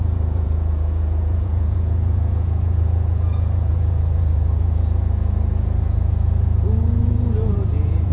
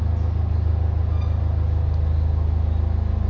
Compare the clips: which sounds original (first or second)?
second